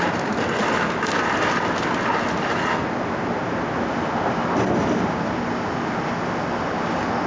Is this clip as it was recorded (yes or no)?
yes